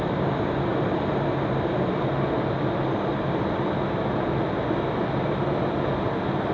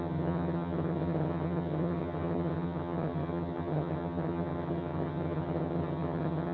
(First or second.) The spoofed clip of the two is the second